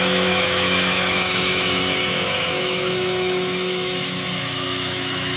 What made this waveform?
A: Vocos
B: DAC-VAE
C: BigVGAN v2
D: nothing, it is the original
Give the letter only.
B